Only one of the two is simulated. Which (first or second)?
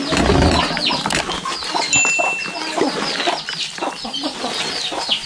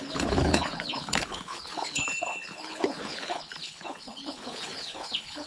second